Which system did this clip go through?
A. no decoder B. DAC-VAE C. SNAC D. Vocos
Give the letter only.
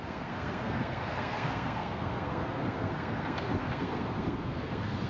C